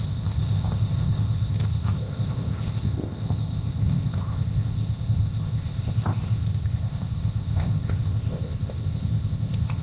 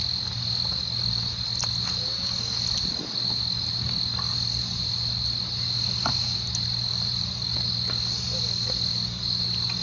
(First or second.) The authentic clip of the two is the second